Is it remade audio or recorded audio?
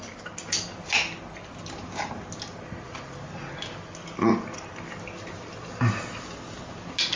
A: recorded